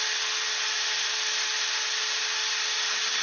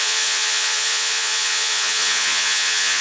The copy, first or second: second